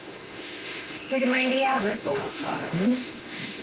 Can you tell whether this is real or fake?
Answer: fake